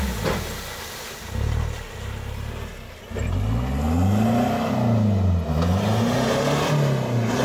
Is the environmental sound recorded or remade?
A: recorded